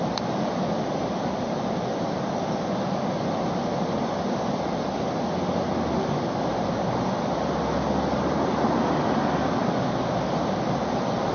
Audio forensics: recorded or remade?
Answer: recorded